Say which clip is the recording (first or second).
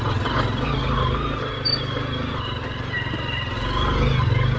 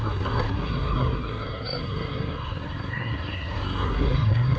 first